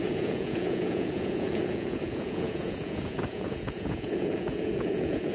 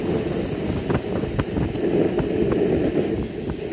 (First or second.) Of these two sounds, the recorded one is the second